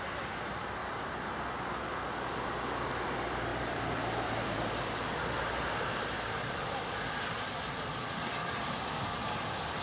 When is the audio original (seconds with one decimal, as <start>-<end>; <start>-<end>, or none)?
0.0-0.8; 1.4-3.5; 7.2-9.8